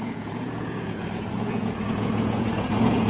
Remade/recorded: remade